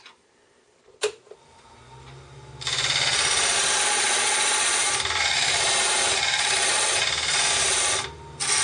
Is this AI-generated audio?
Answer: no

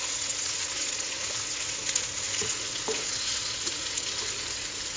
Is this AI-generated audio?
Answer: yes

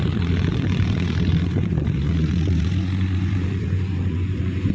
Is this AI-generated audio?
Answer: yes